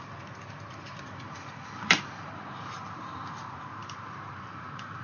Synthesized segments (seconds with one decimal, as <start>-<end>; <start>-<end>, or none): 0.0-5.0